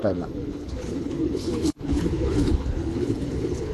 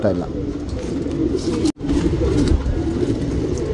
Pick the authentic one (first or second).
second